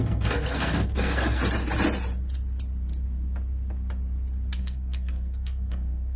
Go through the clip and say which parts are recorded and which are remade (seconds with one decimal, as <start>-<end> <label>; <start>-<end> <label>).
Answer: 0.0-1.4 remade; 1.4-4.6 recorded; 4.6-6.2 remade